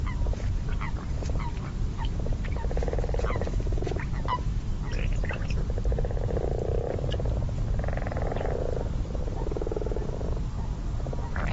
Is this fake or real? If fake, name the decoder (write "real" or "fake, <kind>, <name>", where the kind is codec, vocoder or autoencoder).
fake, vocoder, BigVGAN v2